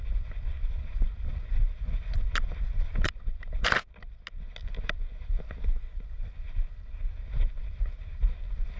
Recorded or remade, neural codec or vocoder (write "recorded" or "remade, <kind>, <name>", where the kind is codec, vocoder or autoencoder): recorded